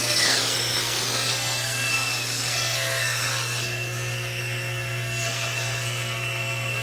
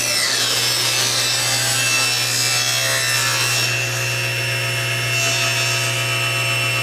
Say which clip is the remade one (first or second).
first